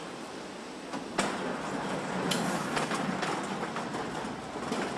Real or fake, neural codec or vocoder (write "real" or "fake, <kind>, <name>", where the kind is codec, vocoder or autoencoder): real